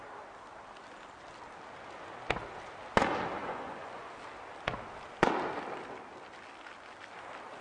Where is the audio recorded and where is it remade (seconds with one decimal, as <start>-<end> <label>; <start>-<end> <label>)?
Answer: 0.0-3.4 recorded; 3.4-4.1 remade; 4.1-7.6 recorded